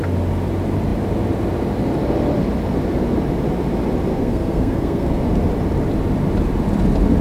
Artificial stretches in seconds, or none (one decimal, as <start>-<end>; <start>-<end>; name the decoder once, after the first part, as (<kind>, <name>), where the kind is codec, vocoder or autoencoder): 4.1-5.2 (codec, SNAC)